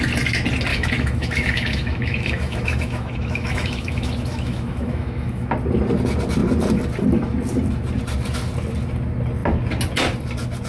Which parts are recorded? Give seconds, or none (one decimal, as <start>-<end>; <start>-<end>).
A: 0.0-0.7; 5.5-10.7